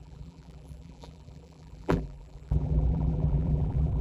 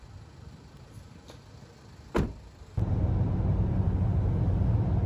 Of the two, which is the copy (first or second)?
first